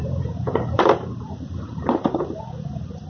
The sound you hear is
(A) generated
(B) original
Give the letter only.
A